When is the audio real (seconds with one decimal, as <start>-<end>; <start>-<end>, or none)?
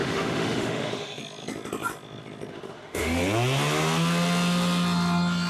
1.2-2.5; 3.2-5.5